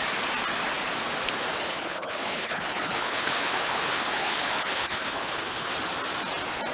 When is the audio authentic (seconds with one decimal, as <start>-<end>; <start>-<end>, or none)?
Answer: 0.0-1.7; 5.7-6.7